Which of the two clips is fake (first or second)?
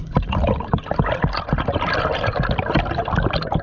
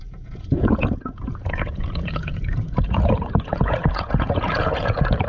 second